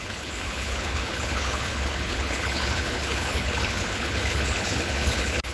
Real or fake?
fake